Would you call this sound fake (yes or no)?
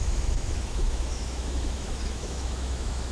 yes